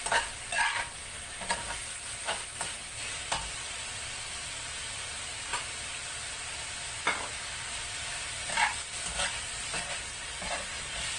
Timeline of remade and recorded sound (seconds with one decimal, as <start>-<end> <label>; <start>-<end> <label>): 0.0-11.2 recorded